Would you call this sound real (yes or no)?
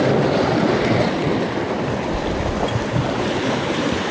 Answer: yes